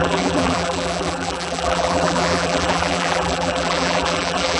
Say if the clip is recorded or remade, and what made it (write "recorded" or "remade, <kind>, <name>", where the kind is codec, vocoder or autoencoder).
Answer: remade, vocoder, BigVGAN v2